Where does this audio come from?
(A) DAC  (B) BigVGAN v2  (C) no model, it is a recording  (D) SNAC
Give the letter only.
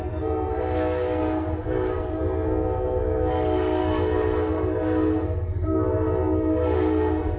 D